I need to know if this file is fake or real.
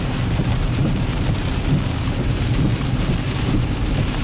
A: fake